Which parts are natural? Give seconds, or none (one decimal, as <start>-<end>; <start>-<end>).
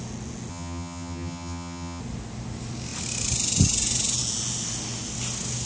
0.0-0.5; 2.0-5.7